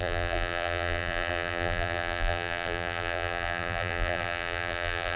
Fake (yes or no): yes